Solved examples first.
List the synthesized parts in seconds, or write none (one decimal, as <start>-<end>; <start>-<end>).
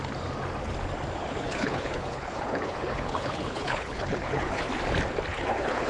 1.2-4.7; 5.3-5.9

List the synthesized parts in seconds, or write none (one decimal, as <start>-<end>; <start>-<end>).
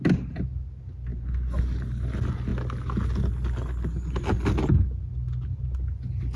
none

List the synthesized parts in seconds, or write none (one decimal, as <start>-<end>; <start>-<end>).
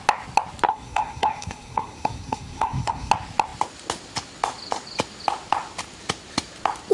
0.7-3.1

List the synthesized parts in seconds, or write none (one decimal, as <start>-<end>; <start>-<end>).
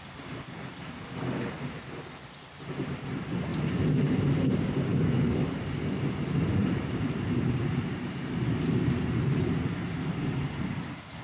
3.5-4.5; 6.6-11.2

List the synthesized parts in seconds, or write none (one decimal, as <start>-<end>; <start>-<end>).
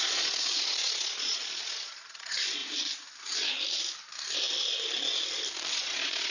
0.0-2.6; 5.7-6.3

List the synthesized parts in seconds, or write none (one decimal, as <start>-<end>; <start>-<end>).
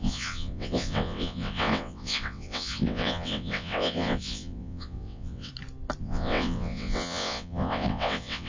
0.0-5.5; 6.0-8.5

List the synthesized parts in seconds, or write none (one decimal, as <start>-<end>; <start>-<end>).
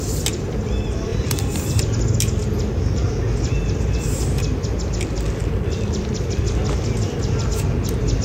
1.1-1.8; 5.4-6.4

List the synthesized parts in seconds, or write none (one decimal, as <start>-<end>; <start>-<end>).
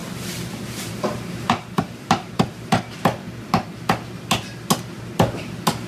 0.0-2.8